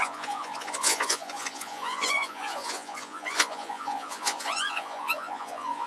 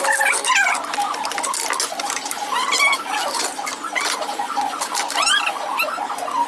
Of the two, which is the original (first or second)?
second